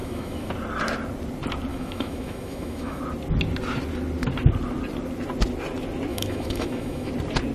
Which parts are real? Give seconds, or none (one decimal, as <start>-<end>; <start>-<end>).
0.5-1.7; 3.0-6.1; 7.1-7.5